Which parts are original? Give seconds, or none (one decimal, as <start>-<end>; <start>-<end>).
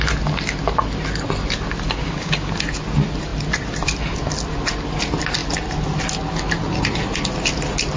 0.0-2.0; 2.5-8.0